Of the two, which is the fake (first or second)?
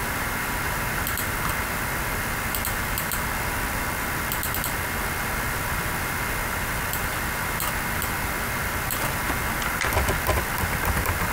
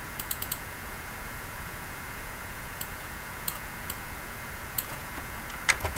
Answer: second